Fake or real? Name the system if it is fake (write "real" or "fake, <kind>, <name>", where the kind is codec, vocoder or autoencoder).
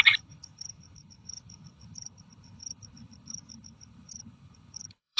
fake, codec, HILCodec